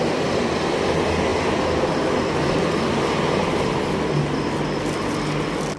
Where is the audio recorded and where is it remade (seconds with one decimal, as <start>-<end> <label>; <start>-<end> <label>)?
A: 0.0-5.8 recorded